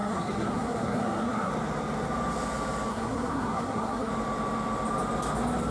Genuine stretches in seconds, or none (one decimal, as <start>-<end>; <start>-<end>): 1.5-2.9; 4.1-5.7